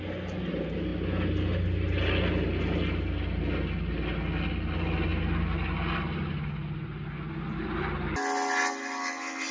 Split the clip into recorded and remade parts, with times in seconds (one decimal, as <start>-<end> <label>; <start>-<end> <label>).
0.0-9.5 recorded